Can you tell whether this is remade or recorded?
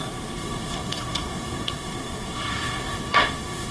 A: remade